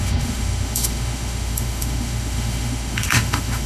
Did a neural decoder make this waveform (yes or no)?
yes